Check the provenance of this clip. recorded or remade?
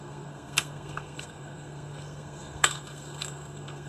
remade